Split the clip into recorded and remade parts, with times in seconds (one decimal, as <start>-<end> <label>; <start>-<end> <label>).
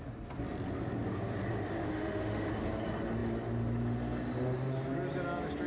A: 0.0-1.8 recorded; 1.8-2.5 remade; 2.5-5.7 recorded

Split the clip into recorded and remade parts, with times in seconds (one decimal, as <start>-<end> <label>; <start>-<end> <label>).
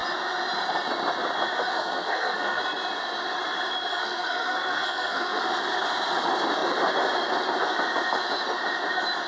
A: 0.0-1.7 recorded; 1.7-2.6 remade; 2.6-3.9 recorded; 3.9-5.4 remade; 5.4-9.3 recorded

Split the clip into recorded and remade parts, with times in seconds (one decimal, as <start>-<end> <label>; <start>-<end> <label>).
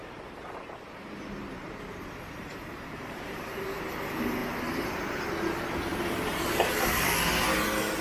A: 0.0-3.9 remade; 3.9-4.4 recorded; 4.4-4.9 remade; 4.9-5.9 recorded; 5.9-6.9 remade; 6.9-8.0 recorded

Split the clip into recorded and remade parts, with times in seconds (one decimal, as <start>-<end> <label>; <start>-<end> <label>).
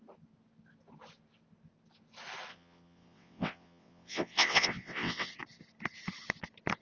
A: 0.0-2.5 recorded; 2.5-5.3 remade; 5.3-6.8 recorded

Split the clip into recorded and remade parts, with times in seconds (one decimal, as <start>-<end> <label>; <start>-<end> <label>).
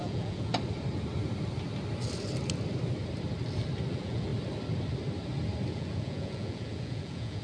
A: 0.0-0.5 remade; 0.5-3.9 recorded; 3.9-4.3 remade; 4.3-5.7 recorded; 5.7-7.4 remade